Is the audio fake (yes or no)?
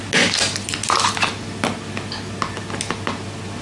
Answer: no